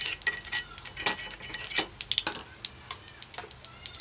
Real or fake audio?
real